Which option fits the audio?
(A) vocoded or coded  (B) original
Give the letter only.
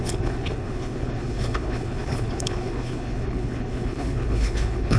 A